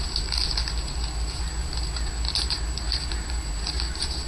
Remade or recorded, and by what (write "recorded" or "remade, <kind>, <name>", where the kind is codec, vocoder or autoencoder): remade, vocoder, BigVGAN v2